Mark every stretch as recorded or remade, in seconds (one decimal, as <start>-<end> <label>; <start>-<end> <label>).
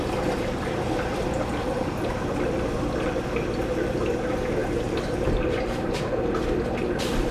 0.0-4.6 recorded; 4.6-6.0 remade; 6.0-7.3 recorded